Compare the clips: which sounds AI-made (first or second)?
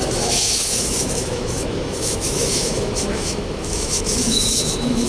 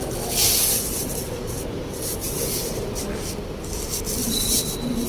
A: first